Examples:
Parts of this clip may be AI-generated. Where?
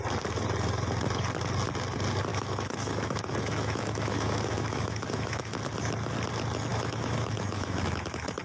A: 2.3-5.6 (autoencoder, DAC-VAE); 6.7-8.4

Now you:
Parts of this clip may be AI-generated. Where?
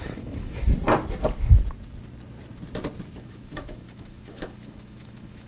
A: 0.0-0.6 (autoencoder, DAC-VAE); 3.2-5.5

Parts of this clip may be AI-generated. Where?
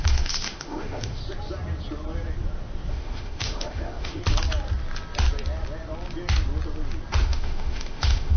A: 0.0-1.2 (autoencoder, DAC-VAE); 2.9-4.2; 7.2-8.4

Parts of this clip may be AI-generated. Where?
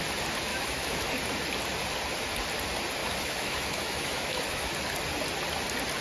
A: 0.5-1.1 (autoencoder, DAC-VAE); 3.0-4.7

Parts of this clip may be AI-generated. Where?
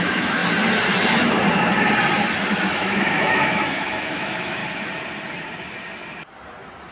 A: 0.0-0.4 (autoencoder, DAC-VAE); 2.6-4.6